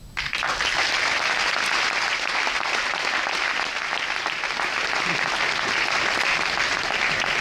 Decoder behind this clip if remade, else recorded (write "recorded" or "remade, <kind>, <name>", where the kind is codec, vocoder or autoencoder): recorded